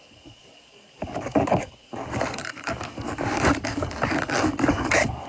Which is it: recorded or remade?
remade